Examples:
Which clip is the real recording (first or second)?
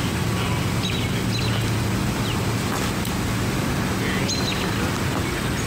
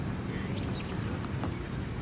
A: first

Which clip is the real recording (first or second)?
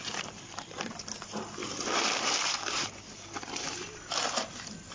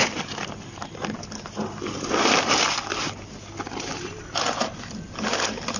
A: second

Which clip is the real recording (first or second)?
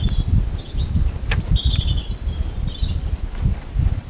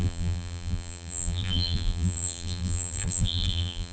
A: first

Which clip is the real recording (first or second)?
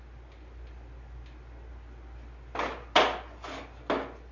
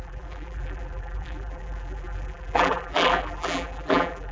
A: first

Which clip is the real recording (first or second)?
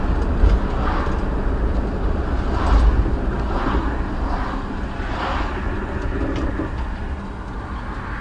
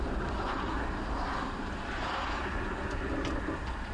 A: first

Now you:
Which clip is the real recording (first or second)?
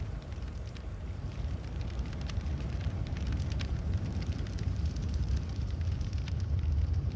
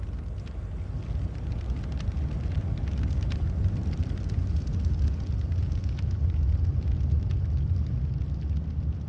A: second